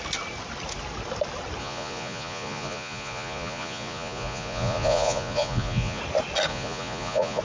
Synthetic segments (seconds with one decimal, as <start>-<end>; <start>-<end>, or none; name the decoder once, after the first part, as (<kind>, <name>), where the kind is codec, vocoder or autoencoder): 1.6-6.0 (vocoder, Vocos); 6.5-7.4

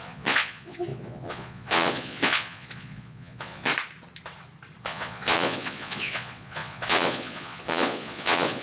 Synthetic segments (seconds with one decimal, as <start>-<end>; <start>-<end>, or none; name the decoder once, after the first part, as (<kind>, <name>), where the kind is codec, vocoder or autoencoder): 0.0-3.7 (vocoder, Vocos); 4.8-8.6

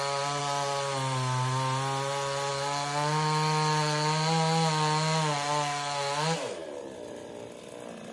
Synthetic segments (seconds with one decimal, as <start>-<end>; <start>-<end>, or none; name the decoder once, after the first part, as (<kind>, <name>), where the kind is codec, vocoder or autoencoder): none

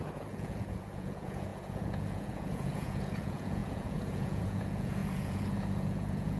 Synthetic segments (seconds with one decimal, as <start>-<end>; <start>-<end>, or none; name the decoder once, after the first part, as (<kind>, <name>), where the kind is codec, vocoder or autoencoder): 0.0-6.4 (vocoder, Vocos)

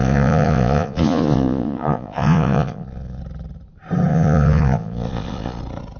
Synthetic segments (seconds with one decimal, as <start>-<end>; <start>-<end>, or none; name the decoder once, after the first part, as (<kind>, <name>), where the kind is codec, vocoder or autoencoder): 0.0-3.2 (vocoder, Vocos); 4.1-5.6

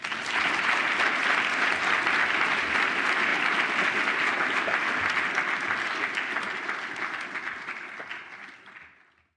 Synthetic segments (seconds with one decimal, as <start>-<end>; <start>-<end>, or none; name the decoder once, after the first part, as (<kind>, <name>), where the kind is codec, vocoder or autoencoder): none

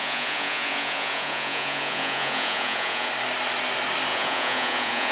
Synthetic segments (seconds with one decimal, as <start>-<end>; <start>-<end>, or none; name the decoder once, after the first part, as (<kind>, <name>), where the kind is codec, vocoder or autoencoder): 0.0-3.1 (vocoder, Vocos); 4.1-5.1

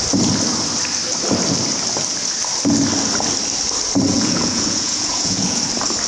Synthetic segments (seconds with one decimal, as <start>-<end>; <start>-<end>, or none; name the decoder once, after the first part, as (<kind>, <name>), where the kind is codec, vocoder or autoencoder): 4.1-5.6 (vocoder, Vocos)